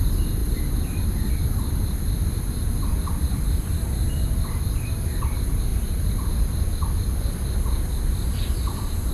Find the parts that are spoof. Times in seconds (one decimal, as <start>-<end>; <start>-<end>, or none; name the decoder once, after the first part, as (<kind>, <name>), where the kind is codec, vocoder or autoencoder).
none

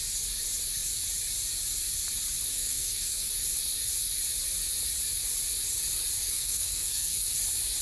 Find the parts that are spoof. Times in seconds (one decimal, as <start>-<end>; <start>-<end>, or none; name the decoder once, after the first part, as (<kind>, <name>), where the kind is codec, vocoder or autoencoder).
2.5-3.3 (codec, SNAC); 6.2-7.3